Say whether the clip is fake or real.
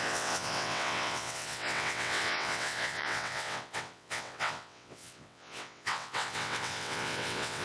fake